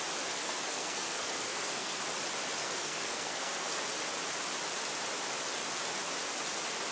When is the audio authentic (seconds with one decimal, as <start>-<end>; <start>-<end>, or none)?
0.0-0.4; 2.0-2.6; 3.8-6.9